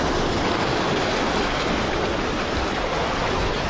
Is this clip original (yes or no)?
yes